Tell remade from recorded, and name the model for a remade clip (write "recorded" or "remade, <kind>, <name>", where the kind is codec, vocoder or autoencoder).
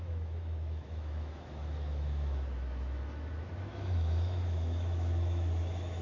remade, autoencoder, DAC-VAE